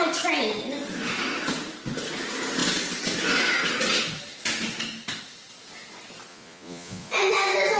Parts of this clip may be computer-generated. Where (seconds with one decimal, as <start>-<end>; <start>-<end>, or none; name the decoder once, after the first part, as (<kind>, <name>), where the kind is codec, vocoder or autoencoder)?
6.3-7.1 (vocoder, Vocos)